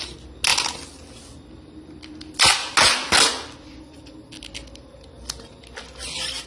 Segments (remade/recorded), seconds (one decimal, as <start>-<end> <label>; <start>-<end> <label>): 0.0-6.5 recorded